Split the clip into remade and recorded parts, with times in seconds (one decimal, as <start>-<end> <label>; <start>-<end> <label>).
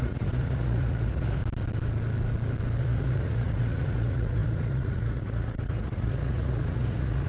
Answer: 0.0-1.4 remade; 1.4-2.8 recorded; 2.8-7.3 remade